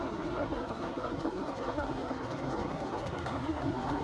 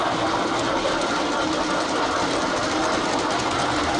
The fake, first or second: first